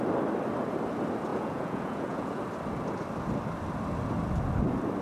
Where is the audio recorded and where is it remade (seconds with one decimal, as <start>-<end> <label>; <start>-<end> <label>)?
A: 0.0-1.3 recorded; 1.3-2.4 remade; 2.4-5.0 recorded

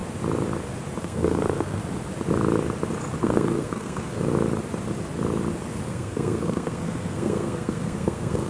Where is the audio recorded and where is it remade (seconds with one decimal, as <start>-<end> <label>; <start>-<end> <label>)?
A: 0.0-1.0 recorded; 1.0-1.8 remade; 1.8-3.2 recorded; 3.2-4.3 remade; 4.3-5.9 recorded; 5.9-8.5 remade

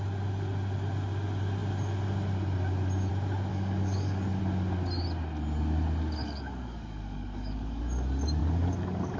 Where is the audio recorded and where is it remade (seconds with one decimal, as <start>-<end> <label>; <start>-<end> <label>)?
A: 0.0-3.5 recorded; 3.5-4.4 remade; 4.4-6.2 recorded; 6.2-7.8 remade; 7.8-8.4 recorded; 8.4-9.2 remade

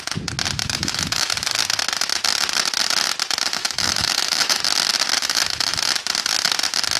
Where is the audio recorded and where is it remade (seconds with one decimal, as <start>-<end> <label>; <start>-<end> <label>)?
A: 0.0-0.6 recorded; 0.6-1.3 remade; 1.3-3.6 recorded; 3.6-4.6 remade; 4.6-5.2 recorded; 5.2-5.9 remade; 5.9-7.0 recorded

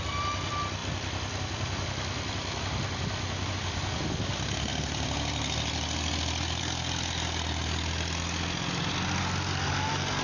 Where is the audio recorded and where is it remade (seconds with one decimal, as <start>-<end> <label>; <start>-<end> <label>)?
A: 0.0-10.2 recorded

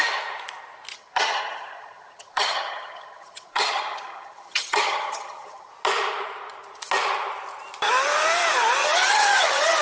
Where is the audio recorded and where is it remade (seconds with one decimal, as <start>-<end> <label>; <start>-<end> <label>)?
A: 0.0-0.9 recorded; 0.9-5.7 remade; 5.7-8.8 recorded; 8.8-9.8 remade

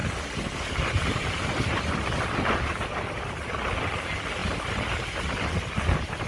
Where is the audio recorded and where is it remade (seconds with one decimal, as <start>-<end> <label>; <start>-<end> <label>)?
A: 0.0-6.3 recorded

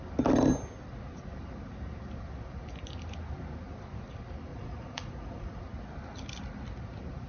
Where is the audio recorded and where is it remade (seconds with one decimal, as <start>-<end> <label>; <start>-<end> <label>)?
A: 0.0-4.5 recorded; 4.5-5.6 remade; 5.6-7.3 recorded